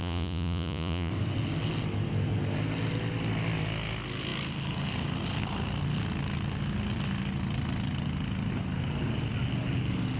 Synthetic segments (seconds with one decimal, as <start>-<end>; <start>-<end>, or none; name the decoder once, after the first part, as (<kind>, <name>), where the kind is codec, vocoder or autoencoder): 0.0-1.1 (vocoder, Vocos)